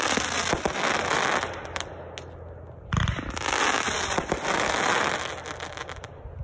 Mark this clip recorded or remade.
recorded